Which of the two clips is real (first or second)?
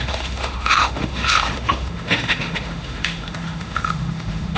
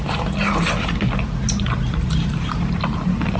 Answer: second